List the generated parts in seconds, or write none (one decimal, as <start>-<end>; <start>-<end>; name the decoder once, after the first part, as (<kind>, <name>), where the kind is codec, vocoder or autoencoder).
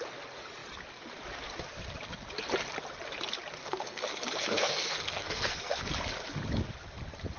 3.6-5.8 (codec, SNAC)